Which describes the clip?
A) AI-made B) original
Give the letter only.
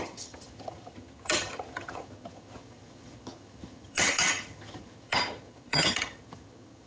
A